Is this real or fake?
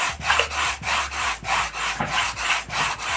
real